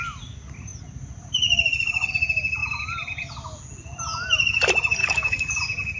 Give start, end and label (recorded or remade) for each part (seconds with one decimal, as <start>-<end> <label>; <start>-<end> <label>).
0.0-5.0 recorded; 5.0-5.6 remade; 5.6-6.0 recorded

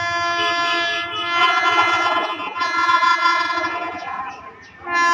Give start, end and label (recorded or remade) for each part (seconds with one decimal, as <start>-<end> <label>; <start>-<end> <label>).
0.0-1.4 recorded; 1.4-4.2 remade; 4.2-5.1 recorded

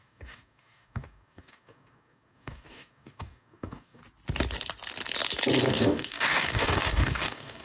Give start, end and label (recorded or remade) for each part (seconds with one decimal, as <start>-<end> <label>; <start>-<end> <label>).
0.0-4.0 remade; 4.0-5.7 recorded; 5.7-7.6 remade

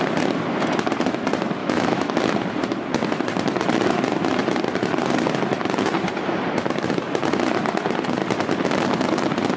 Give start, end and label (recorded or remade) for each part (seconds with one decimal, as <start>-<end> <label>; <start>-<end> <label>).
0.0-1.6 recorded; 1.6-2.2 remade; 2.2-9.6 recorded

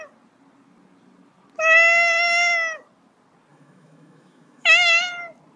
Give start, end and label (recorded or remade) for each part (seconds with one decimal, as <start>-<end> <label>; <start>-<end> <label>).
0.0-3.5 recorded; 3.5-5.0 remade; 5.0-5.6 recorded